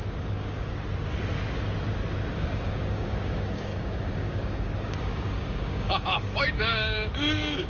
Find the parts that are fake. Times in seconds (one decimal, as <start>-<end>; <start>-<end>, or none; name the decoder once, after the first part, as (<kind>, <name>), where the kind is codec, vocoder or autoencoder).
0.0-0.7 (codec, DAC); 2.3-7.7